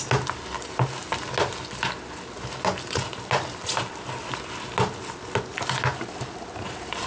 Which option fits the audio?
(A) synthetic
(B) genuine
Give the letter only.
B